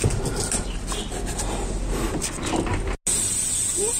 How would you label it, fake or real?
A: real